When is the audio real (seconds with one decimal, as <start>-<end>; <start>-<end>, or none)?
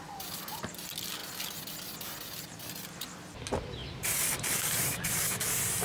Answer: 0.0-3.8; 4.9-5.8